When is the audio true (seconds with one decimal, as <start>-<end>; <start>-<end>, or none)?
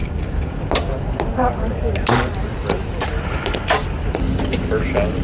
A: 0.6-5.2